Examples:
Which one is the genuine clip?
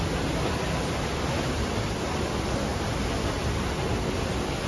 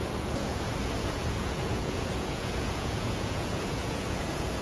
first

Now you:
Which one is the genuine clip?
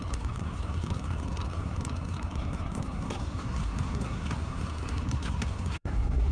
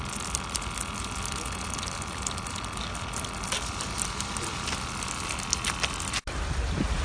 second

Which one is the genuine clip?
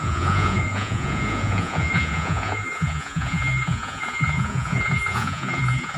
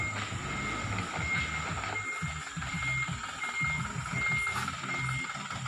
second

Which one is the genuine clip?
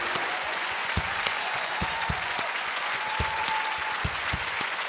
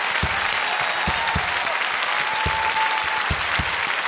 second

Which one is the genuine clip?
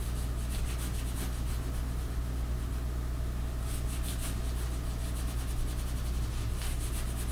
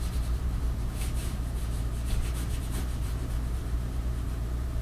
first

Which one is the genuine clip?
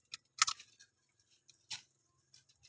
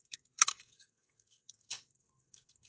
first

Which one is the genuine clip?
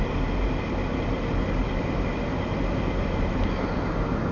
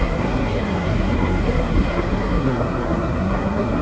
first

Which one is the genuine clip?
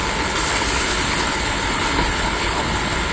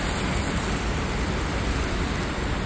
second